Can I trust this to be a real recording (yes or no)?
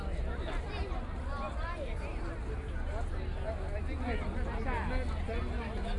yes